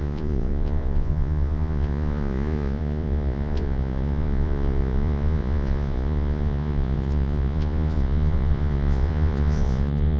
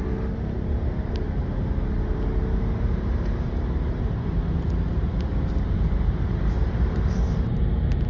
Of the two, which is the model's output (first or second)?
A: first